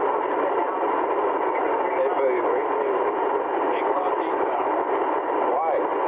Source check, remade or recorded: remade